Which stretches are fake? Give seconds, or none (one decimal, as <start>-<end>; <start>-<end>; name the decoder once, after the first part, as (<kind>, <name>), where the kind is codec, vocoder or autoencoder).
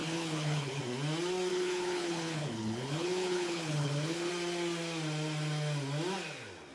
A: 0.0-0.8 (codec, HILCodec); 1.5-4.3